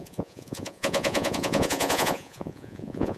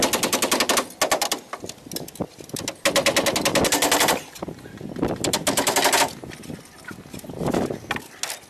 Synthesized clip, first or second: first